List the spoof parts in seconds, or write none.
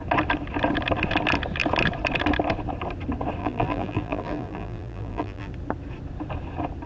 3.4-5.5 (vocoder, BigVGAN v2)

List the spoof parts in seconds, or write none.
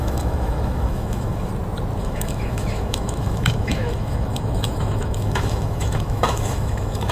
0.0-1.5 (autoencoder, DAC-VAE); 2.0-7.1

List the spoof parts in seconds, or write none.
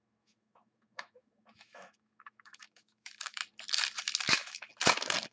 0.0-3.4 (autoencoder, DAC-VAE); 4.3-4.7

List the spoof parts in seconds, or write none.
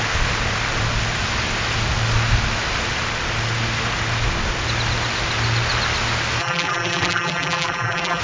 6.4-8.2 (vocoder, BigVGAN v2)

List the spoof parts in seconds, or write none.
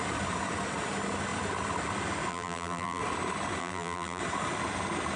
2.3-3.0 (vocoder, BigVGAN v2); 3.6-4.2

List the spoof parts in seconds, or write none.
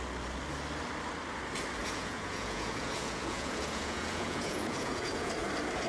1.8-5.3 (vocoder, Vocos)